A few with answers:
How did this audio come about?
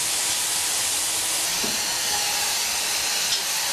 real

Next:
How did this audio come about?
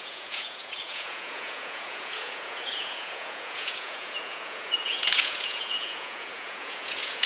fake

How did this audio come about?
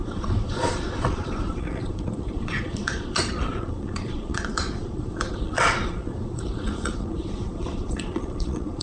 fake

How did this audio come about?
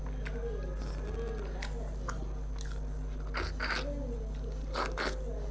real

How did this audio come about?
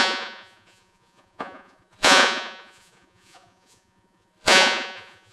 fake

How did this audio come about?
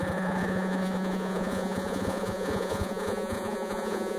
fake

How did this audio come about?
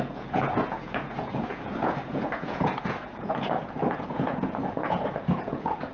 fake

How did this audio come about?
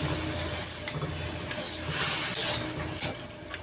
real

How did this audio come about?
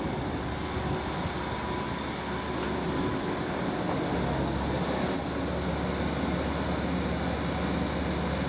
real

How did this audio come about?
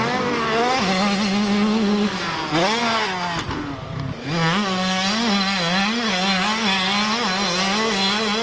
real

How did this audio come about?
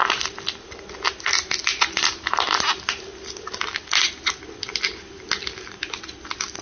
real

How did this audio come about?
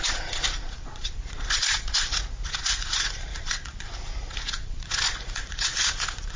fake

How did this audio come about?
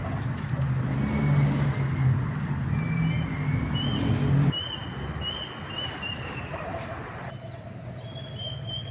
real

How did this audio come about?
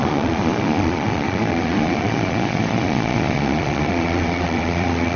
fake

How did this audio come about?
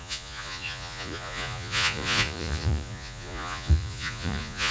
fake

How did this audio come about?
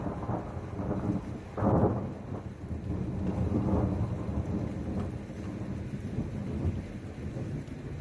real